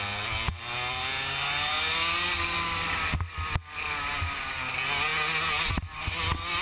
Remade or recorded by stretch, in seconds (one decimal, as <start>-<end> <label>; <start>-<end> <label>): 0.0-6.6 recorded